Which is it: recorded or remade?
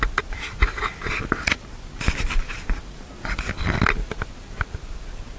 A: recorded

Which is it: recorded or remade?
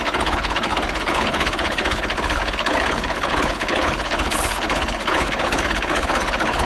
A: remade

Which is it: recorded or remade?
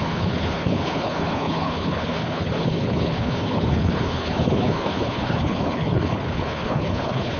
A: remade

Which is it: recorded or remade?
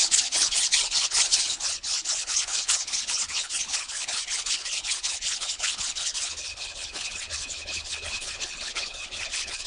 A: remade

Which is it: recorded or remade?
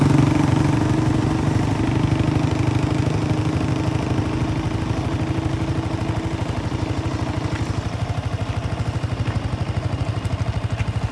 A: recorded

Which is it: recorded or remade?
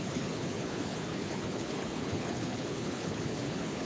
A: remade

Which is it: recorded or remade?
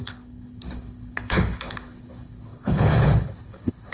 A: remade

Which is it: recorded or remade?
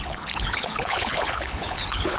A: remade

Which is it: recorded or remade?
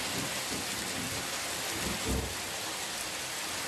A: recorded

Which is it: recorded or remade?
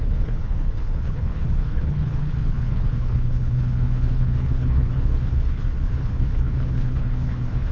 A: remade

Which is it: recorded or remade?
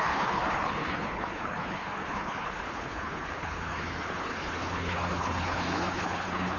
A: remade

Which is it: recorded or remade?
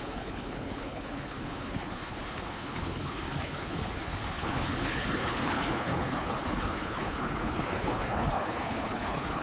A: remade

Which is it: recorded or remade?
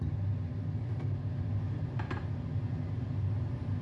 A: recorded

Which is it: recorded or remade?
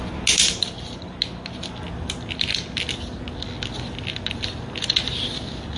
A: recorded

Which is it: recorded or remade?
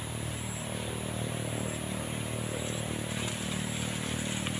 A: recorded